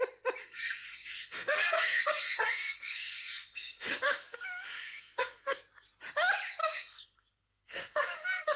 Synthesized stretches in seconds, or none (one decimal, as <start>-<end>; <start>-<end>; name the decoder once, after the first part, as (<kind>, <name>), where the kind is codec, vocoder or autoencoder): 0.4-5.6 (codec, SNAC); 6.6-8.6